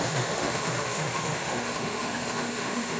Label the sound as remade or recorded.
remade